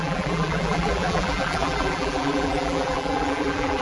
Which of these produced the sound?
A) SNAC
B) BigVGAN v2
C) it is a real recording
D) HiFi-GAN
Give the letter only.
B